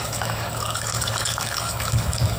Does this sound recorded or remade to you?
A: remade